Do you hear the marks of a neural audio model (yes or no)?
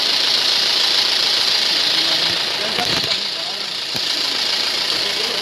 yes